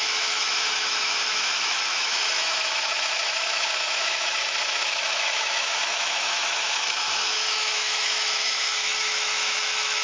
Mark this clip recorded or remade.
remade